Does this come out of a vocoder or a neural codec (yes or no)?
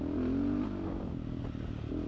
no